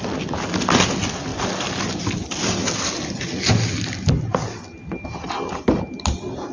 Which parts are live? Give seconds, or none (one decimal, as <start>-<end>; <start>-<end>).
0.0-6.5